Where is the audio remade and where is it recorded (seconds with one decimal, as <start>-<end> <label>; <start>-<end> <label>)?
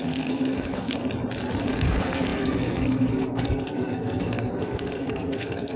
0.0-1.0 remade; 1.0-1.6 recorded; 1.6-5.8 remade